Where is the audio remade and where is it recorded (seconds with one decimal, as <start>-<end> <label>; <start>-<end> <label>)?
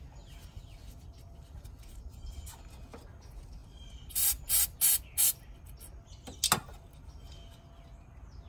0.0-8.5 recorded